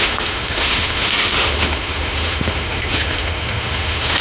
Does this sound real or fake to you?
fake